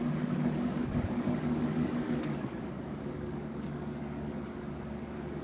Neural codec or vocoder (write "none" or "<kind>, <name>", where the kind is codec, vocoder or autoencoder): codec, DAC